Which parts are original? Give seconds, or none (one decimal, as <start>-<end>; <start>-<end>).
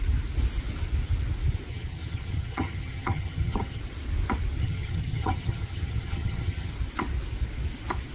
0.0-1.7; 3.8-4.6; 6.7-8.1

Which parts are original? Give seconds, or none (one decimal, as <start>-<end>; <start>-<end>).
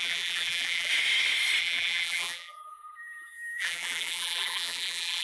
0.9-1.6